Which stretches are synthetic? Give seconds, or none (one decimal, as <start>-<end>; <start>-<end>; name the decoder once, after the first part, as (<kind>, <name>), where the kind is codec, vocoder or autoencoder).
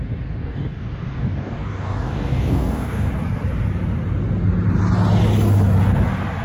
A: 0.4-3.1 (codec, DAC)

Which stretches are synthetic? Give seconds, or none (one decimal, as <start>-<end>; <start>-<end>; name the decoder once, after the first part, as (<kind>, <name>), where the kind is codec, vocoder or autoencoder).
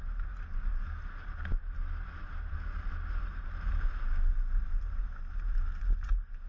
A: none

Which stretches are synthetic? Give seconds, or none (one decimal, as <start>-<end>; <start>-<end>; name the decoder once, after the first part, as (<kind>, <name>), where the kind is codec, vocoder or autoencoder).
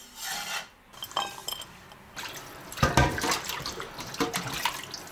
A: 1.4-4.3 (vocoder, BigVGAN v2)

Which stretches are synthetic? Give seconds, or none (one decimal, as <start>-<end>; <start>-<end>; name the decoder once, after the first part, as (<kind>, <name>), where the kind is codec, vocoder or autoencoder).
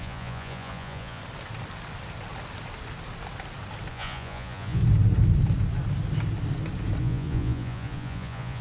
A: 0.0-1.2 (vocoder, Vocos); 3.9-4.8; 7.0-8.6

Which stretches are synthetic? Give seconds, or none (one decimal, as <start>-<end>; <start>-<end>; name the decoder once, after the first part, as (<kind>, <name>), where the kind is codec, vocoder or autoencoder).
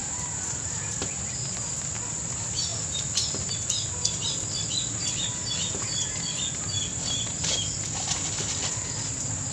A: none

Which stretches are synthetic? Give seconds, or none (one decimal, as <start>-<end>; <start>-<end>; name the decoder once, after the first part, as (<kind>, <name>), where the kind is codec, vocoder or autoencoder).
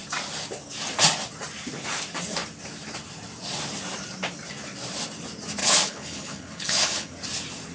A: 5.6-7.1 (codec, HILCodec)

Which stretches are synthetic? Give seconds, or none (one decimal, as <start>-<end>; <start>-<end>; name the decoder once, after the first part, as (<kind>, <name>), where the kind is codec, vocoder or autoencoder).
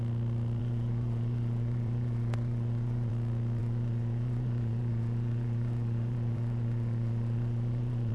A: 0.6-3.1 (vocoder, Vocos); 3.6-8.1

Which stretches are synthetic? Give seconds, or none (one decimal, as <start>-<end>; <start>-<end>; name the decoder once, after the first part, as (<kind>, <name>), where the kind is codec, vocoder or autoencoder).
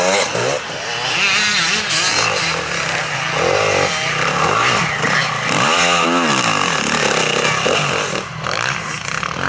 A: none